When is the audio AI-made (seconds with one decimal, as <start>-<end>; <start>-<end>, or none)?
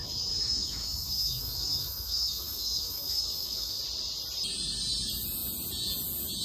0.0-3.8